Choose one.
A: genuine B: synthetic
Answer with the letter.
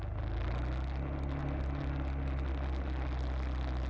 A